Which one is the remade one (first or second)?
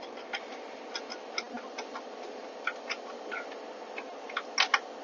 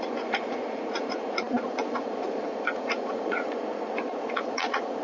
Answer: second